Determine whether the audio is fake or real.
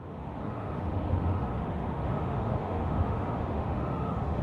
fake